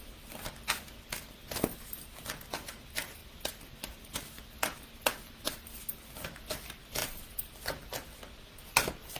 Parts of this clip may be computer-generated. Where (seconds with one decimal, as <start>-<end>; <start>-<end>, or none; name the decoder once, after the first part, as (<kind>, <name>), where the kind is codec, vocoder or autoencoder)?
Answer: none